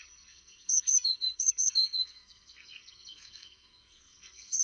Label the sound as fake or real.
fake